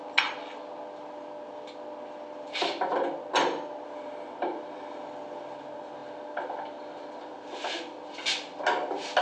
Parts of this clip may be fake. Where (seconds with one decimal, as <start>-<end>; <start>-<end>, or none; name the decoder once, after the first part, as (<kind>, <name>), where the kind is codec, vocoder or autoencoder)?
none